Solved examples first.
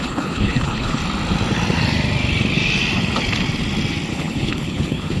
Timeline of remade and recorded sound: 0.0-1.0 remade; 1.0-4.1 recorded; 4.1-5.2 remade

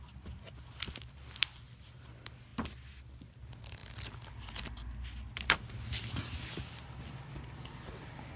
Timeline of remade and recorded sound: 0.0-8.4 recorded

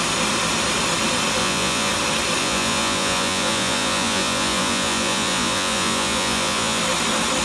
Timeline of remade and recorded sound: 0.0-1.4 recorded; 1.4-1.9 remade; 1.9-2.4 recorded; 2.4-6.8 remade; 6.8-7.4 recorded